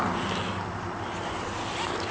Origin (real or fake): real